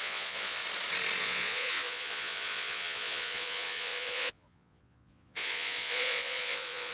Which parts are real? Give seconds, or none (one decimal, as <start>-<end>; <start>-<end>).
0.6-1.2